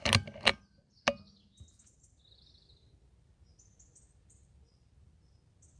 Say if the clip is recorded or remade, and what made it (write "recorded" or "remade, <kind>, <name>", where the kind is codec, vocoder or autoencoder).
recorded